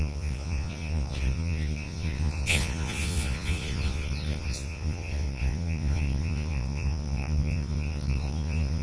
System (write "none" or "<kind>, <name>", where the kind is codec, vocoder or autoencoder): vocoder, Vocos